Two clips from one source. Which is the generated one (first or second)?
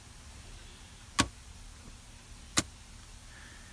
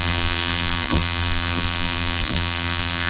second